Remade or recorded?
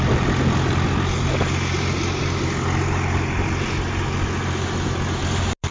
recorded